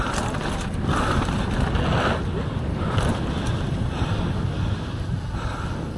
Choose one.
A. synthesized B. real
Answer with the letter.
B